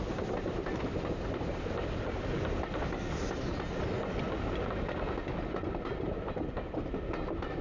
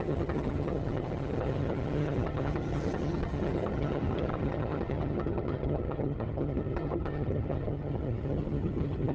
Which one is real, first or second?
first